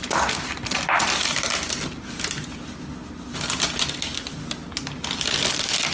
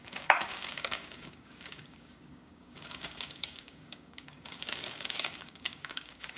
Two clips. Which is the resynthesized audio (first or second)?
second